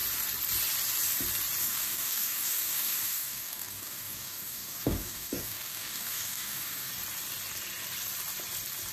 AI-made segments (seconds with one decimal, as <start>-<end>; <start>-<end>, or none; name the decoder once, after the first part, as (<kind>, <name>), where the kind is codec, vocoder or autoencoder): 1.6-6.9 (codec, DAC)